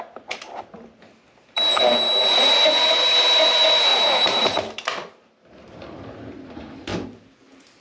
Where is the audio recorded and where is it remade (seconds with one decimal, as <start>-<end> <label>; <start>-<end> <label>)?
0.0-7.8 recorded